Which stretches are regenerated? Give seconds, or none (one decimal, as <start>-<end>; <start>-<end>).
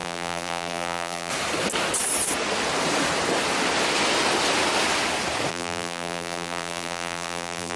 0.0-1.3; 5.5-7.8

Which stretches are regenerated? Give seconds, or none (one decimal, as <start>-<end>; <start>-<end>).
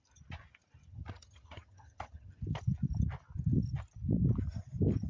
0.9-2.3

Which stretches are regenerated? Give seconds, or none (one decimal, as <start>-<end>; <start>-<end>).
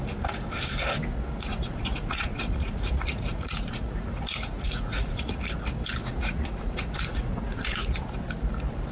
1.5-5.4; 6.0-8.0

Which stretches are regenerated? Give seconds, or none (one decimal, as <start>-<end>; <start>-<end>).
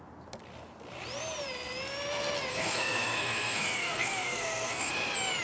2.5-4.9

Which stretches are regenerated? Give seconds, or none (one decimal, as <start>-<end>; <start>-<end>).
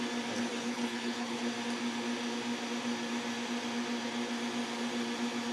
0.5-1.4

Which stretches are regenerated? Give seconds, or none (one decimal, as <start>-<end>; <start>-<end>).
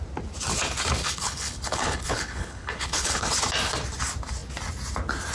1.0-3.3